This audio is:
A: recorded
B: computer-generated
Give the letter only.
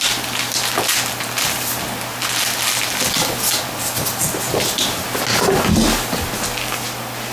A